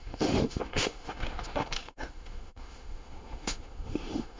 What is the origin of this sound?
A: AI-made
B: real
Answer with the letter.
A